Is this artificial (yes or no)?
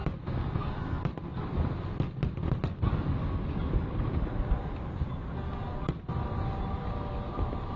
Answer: no